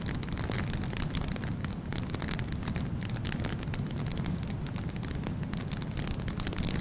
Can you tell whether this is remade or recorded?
recorded